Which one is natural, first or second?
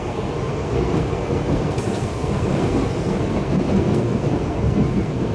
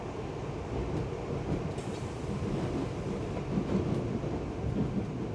second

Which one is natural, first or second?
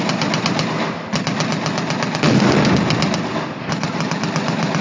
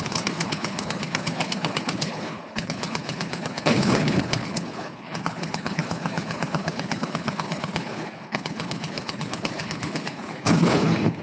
first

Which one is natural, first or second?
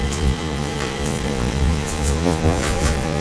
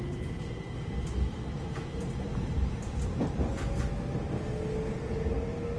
second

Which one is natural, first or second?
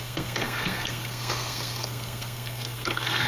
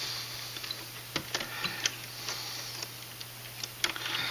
second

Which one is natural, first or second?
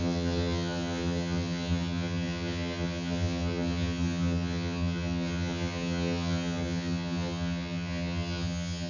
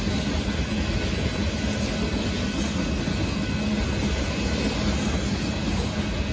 second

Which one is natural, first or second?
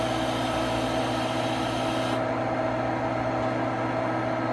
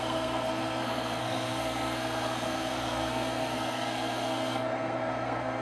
first